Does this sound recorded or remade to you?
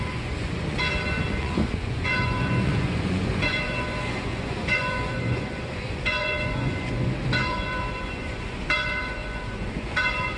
remade